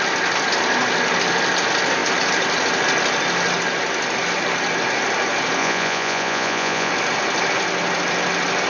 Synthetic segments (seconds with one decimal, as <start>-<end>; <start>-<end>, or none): 5.6-6.9

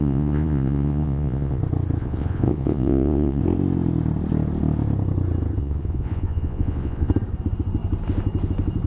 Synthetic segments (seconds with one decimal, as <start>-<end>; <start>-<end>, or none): 0.0-1.6; 2.0-3.4; 5.6-7.1

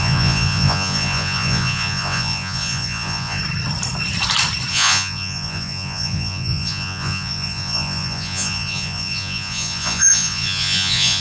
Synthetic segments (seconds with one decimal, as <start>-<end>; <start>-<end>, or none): 0.0-3.4; 4.7-11.2